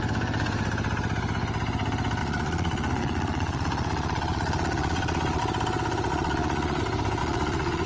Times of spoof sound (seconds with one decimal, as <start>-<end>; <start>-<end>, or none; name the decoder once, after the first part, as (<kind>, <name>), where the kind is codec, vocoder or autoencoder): 2.2-5.4 (vocoder, Vocos); 6.1-6.8; 7.2-7.9